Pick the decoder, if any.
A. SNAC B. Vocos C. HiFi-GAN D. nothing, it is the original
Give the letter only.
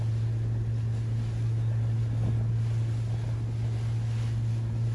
D